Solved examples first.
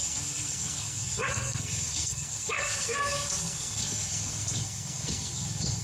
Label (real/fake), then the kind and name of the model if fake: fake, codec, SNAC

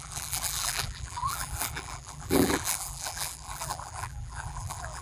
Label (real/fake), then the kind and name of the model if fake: fake, vocoder, BigVGAN v2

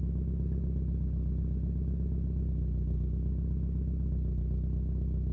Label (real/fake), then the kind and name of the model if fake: real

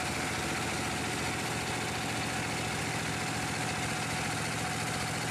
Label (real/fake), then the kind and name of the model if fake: real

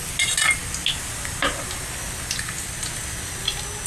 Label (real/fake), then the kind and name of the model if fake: real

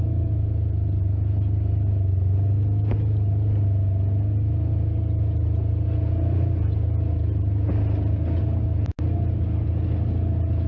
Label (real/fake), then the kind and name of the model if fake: real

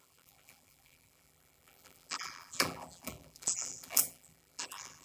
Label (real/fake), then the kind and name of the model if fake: fake, vocoder, BigVGAN v2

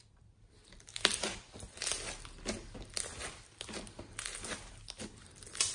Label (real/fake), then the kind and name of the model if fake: real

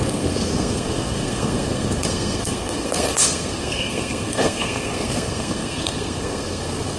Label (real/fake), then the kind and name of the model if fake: fake, codec, SNAC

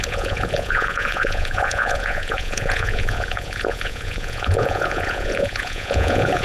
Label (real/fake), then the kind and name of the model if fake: fake, vocoder, Vocos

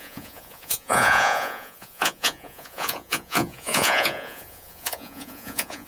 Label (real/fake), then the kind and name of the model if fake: fake, vocoder, Vocos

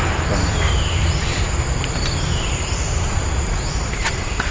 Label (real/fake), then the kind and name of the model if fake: fake, vocoder, BigVGAN v2